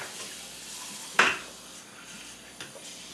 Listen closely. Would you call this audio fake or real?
real